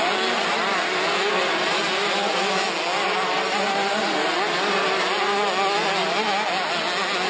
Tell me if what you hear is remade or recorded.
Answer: recorded